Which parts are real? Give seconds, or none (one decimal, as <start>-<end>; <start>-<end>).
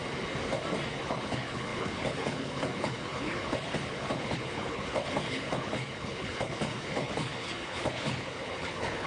0.0-0.9